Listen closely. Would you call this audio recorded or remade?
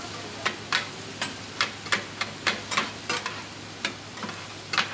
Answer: recorded